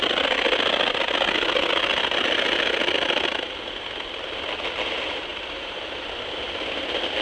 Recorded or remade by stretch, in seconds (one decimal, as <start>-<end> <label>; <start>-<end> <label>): 0.0-5.3 recorded; 5.3-6.2 remade; 6.2-7.2 recorded